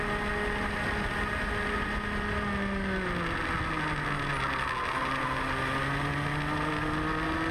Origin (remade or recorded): recorded